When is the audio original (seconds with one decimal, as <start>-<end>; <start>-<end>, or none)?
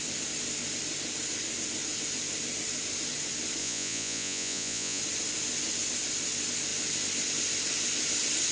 0.0-3.6; 5.0-8.5